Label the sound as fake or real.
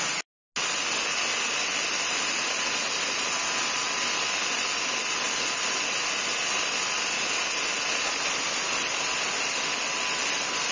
real